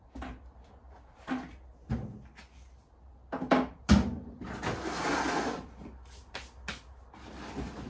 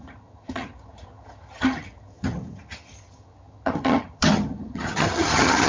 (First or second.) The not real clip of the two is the second